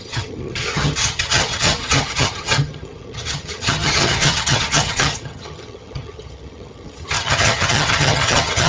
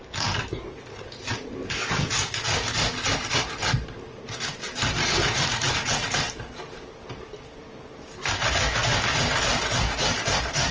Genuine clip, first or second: second